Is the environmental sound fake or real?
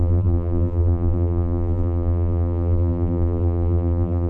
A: fake